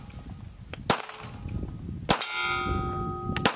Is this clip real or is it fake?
real